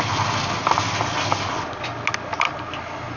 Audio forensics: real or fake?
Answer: real